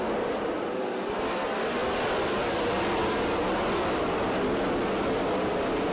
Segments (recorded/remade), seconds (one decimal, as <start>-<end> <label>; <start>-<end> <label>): 0.0-5.9 recorded